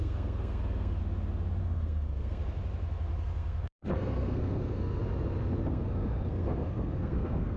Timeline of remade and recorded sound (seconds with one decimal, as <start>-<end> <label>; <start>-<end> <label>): 0.0-1.0 remade; 1.0-1.6 recorded; 1.6-2.4 remade; 2.4-3.2 recorded; 3.2-5.0 remade; 5.0-5.7 recorded; 5.7-7.6 remade

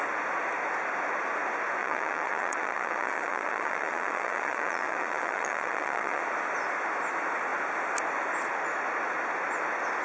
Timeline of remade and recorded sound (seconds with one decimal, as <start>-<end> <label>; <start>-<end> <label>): 0.0-1.8 recorded; 1.8-6.2 remade; 6.2-10.0 recorded